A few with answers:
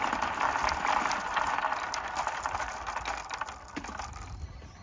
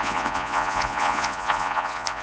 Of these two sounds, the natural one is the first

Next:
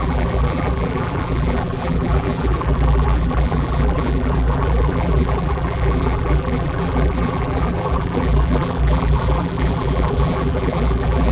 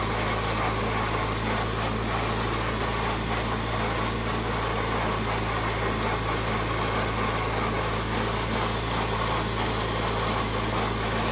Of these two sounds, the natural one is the second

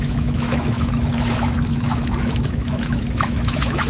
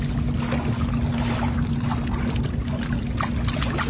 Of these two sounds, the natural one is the second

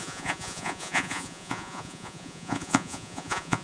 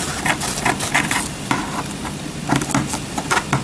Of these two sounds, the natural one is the second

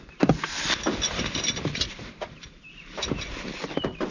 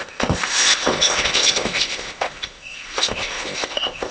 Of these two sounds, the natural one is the first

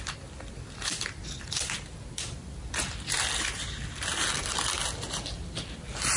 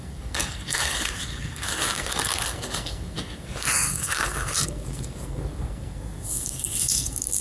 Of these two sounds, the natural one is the first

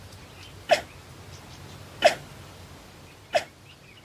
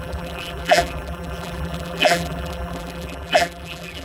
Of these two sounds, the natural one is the first